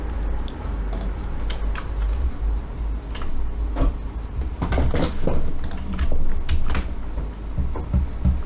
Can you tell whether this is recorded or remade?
recorded